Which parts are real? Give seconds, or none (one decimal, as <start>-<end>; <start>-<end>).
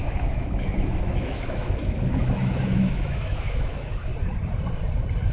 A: 4.1-5.3